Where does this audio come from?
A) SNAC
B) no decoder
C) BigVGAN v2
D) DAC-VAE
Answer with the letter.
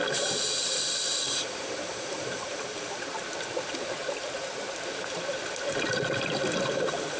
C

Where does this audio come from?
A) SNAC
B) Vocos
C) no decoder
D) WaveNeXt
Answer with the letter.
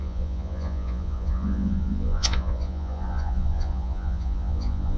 B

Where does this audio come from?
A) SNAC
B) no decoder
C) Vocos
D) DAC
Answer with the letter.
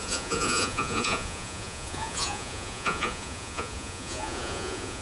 C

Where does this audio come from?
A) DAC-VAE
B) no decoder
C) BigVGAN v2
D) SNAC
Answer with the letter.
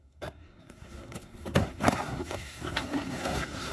D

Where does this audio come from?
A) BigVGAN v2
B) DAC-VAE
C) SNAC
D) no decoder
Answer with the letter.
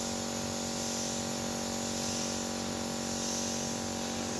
D